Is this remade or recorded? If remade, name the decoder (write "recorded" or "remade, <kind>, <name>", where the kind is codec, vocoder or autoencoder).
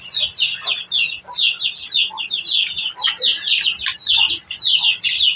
recorded